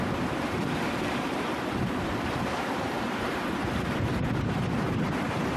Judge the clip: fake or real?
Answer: fake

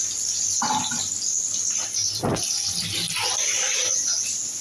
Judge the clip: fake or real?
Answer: real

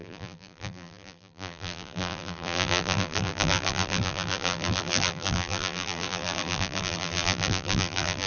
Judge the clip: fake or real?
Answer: fake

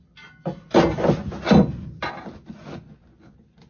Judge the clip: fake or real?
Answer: real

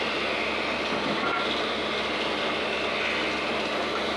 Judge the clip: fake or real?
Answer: fake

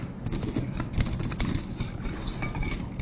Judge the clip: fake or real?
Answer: fake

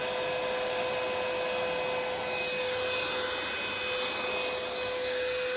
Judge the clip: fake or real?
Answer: real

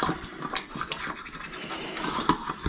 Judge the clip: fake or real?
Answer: real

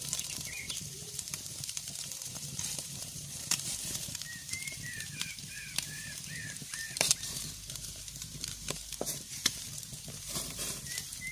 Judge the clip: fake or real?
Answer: fake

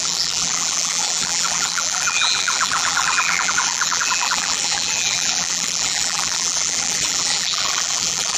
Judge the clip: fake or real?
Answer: fake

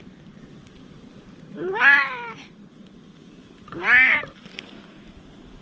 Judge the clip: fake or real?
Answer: fake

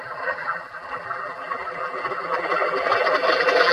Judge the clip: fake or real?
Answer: fake